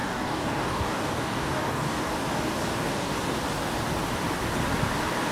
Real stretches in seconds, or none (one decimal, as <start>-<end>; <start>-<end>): 2.1-2.6; 3.1-5.3